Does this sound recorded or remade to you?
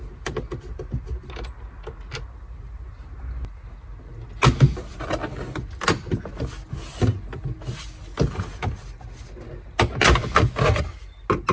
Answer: recorded